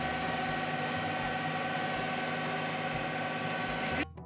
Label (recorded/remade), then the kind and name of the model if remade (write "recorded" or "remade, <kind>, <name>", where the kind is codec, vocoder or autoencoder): recorded